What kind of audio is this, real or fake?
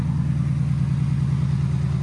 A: real